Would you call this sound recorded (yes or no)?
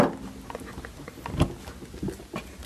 yes